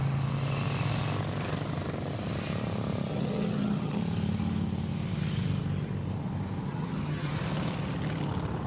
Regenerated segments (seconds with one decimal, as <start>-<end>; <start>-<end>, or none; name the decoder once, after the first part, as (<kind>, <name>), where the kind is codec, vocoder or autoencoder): 3.1-4.0 (vocoder, HiFi-GAN); 6.7-7.3